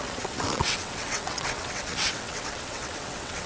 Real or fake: fake